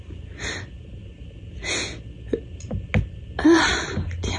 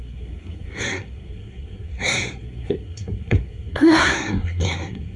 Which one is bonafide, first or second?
first